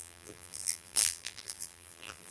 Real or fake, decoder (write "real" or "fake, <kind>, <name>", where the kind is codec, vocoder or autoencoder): fake, vocoder, BigVGAN v2